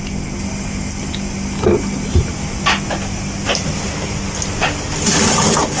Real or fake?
real